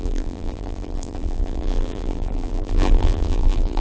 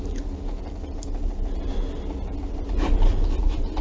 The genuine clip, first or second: second